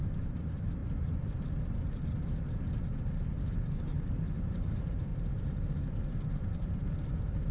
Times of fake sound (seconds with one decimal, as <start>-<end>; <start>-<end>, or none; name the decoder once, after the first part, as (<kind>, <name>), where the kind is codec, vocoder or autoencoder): 0.0-0.8 (vocoder, BigVGAN v2); 3.5-5.1; 6.6-7.5